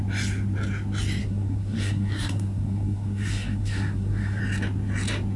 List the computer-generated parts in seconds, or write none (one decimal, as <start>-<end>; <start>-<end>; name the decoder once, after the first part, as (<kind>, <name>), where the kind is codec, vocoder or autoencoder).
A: 1.2-4.4 (codec, SNAC)